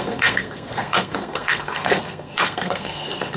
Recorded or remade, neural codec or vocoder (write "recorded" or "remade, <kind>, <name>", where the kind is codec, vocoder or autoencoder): remade, codec, SNAC